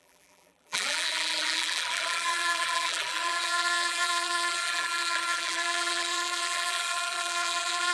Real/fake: fake